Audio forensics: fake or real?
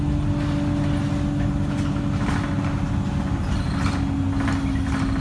real